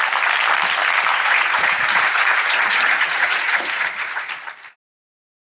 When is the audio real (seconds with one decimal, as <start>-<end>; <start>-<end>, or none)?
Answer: 0.0-1.1; 4.3-5.4

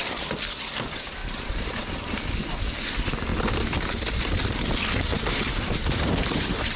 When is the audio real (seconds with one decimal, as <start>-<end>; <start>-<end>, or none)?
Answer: 0.0-1.2; 2.2-5.1

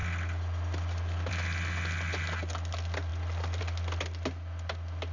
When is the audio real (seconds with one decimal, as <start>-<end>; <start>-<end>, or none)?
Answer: 0.0-5.1

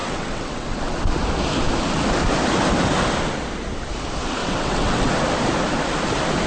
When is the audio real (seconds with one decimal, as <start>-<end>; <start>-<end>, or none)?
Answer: 0.8-4.4; 5.1-6.5

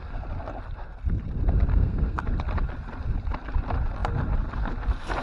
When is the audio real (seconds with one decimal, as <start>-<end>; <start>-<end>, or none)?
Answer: 0.0-1.7; 2.2-5.2

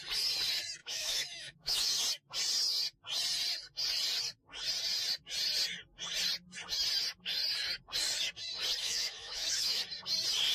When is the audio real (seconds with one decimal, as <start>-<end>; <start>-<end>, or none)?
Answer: 0.0-0.8; 1.9-8.8; 9.8-10.5

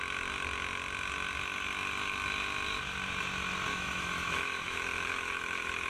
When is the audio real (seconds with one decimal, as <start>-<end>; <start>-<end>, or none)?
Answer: 0.0-3.7

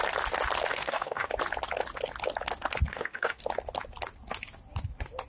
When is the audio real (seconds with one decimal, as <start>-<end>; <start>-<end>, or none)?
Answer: 0.0-0.7; 1.3-2.9; 3.4-5.3